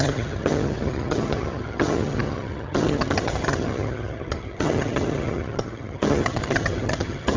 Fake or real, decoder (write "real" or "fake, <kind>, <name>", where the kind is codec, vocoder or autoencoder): fake, vocoder, HiFi-GAN